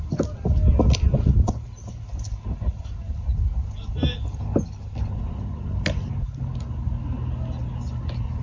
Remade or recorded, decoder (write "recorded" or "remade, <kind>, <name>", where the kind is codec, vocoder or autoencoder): recorded